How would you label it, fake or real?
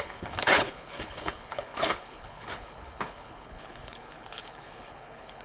fake